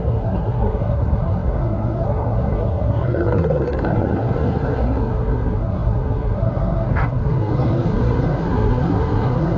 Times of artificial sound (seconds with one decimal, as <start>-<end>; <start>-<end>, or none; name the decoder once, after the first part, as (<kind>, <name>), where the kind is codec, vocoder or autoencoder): 0.0-9.6 (codec, SNAC)